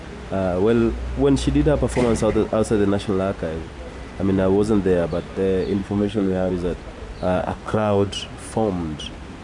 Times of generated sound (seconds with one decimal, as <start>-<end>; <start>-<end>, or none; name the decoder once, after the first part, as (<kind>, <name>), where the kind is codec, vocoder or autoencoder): 5.8-6.5 (codec, SNAC); 7.4-8.1